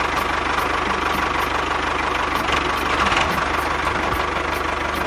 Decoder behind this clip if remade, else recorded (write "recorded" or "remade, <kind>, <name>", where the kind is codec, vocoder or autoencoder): recorded